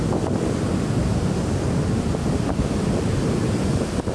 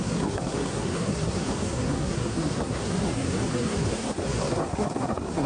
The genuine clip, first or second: first